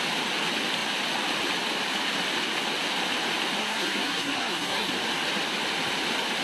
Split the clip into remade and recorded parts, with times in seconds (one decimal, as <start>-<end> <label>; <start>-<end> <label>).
0.0-3.6 recorded; 3.6-4.9 remade; 4.9-6.4 recorded